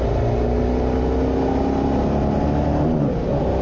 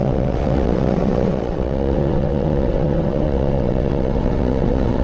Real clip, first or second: first